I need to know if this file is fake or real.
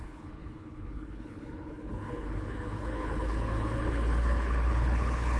fake